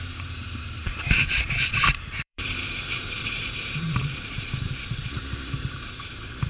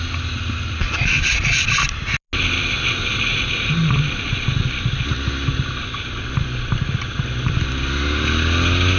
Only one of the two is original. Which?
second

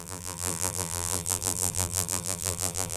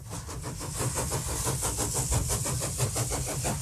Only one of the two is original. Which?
second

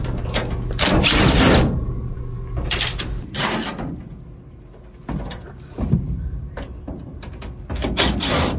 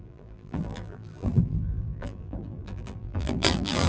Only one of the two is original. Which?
first